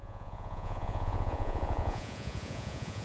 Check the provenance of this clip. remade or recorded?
remade